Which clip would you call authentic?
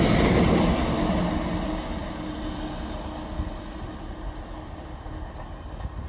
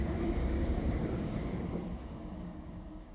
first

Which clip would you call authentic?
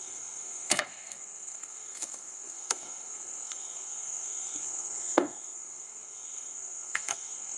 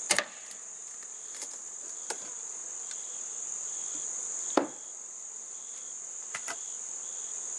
second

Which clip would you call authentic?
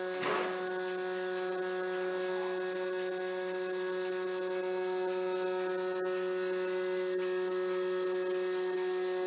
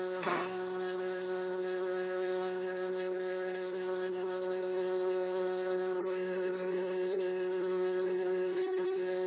first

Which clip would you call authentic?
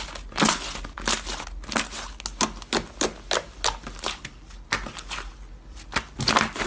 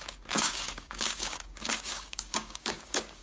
first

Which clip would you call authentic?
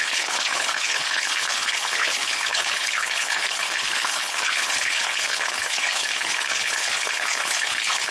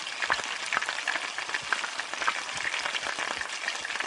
second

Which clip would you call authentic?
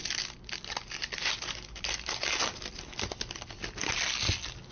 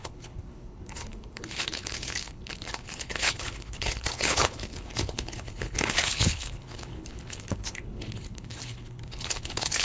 first